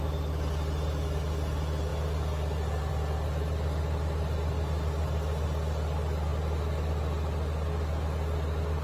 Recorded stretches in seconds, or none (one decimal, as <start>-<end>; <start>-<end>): 0.0-8.8